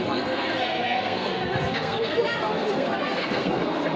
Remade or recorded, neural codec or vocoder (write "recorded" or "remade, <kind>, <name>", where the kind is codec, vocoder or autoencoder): remade, codec, SNAC